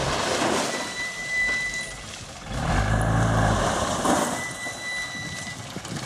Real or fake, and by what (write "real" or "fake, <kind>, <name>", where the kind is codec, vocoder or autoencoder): real